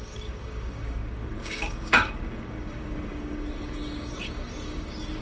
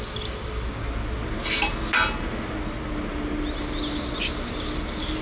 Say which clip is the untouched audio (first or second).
second